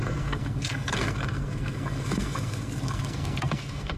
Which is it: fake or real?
fake